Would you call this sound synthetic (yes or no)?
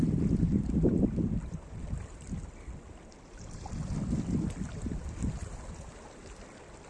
no